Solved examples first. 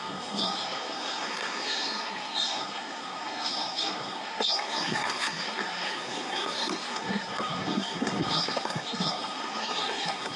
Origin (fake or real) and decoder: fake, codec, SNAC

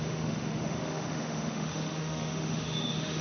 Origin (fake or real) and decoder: fake, autoencoder, DAC-VAE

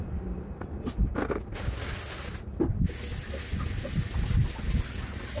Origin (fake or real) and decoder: real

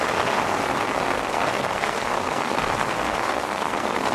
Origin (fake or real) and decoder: fake, codec, SNAC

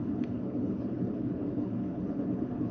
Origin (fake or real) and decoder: fake, codec, HILCodec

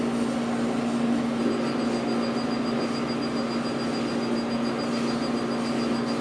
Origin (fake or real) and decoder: real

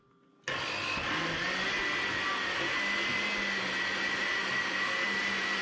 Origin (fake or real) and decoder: real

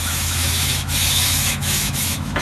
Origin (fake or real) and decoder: fake, autoencoder, DAC-VAE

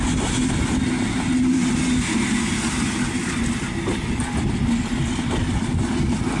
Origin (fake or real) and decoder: real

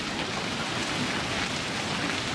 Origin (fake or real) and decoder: real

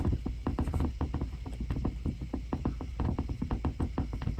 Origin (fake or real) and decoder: real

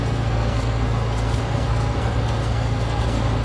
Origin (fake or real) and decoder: fake, codec, SNAC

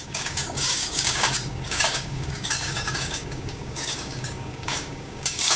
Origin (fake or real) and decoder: fake, codec, DAC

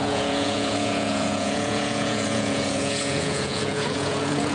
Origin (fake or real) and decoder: fake, vocoder, Vocos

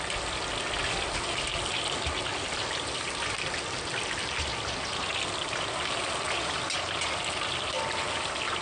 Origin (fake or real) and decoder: real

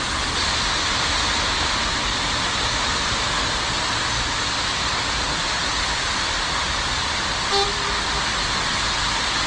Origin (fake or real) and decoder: real